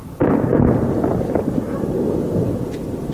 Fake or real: real